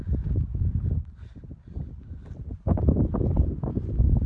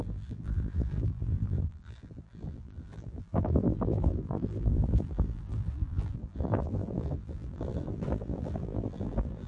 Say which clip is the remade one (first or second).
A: second